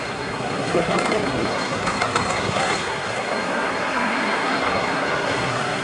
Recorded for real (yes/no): no